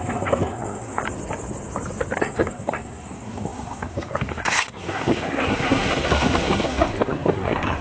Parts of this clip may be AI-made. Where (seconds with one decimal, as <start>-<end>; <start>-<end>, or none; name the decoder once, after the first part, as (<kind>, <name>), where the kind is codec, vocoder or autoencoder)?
0.0-1.0 (codec, SNAC); 2.2-7.8